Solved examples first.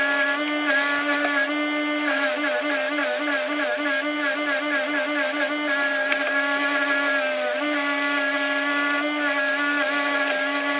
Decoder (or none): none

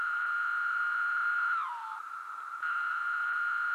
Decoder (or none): vocoder, BigVGAN v2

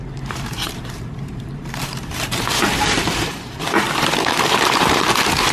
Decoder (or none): vocoder, BigVGAN v2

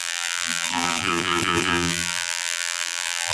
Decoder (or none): vocoder, BigVGAN v2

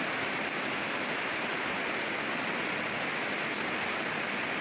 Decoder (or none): none